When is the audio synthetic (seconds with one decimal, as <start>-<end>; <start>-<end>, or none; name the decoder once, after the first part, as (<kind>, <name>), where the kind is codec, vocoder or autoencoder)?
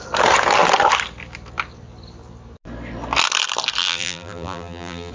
3.8-5.1 (vocoder, BigVGAN v2)